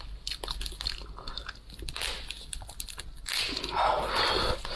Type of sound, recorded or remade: recorded